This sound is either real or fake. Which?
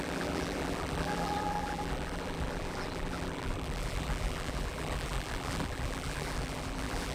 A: fake